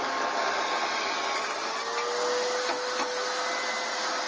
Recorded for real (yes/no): yes